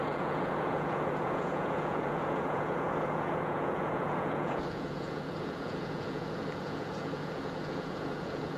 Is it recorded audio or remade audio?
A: remade